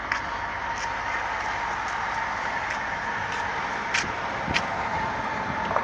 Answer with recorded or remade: recorded